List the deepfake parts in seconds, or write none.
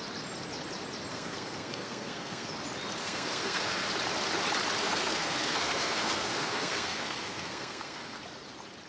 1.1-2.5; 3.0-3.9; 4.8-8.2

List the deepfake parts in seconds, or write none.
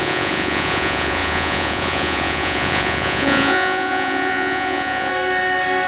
0.0-5.1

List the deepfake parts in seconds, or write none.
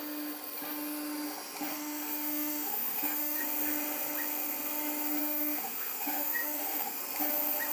1.7-3.4; 5.2-7.0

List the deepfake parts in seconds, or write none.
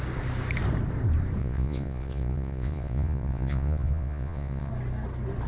1.4-4.7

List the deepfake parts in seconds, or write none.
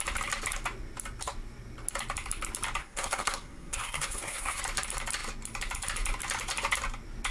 2.8-4.6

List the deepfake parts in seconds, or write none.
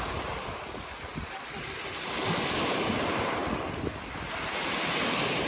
none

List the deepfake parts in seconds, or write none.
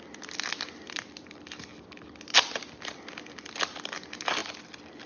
none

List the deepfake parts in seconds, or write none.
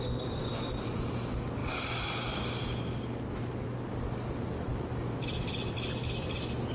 none